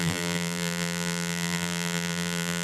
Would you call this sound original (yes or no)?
no